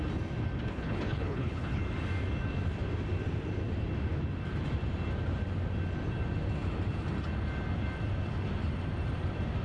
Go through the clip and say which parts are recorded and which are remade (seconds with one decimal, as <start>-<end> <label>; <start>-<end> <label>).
0.0-0.7 recorded; 0.7-1.8 remade; 1.8-9.6 recorded